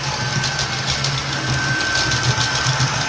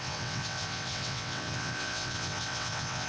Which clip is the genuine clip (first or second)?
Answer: first